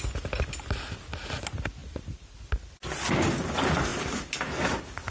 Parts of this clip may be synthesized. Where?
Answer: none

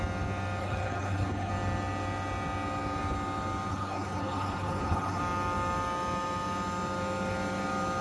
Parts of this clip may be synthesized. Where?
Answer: 0.6-1.5 (codec, HILCodec); 3.7-5.2

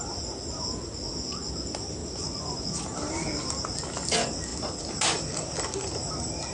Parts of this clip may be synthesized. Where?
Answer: 2.0-2.6 (vocoder, Vocos)

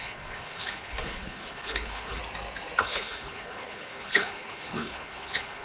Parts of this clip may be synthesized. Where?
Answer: 0.0-2.2 (codec, HILCodec); 2.8-5.6

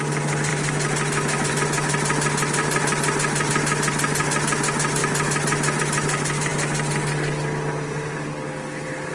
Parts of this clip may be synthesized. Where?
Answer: none

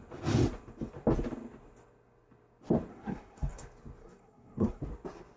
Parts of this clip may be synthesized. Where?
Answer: 2.9-3.6 (codec, SNAC); 4.0-4.8